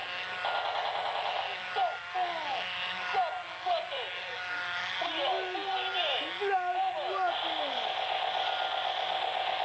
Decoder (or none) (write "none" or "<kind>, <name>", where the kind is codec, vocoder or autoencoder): none